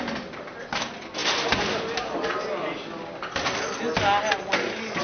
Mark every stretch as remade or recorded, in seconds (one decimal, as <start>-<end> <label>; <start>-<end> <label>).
0.0-5.0 recorded